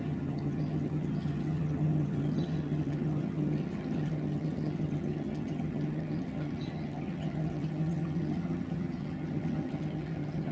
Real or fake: fake